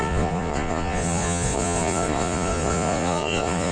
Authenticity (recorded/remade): remade